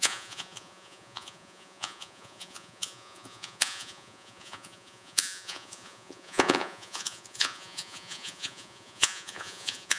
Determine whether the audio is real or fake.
fake